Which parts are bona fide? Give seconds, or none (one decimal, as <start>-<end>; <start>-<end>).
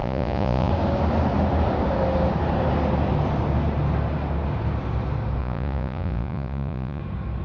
0.7-5.4; 7.0-7.4